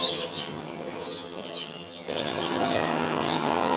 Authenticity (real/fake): fake